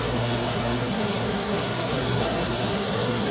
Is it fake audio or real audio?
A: fake